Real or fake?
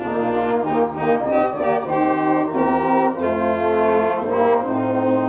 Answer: real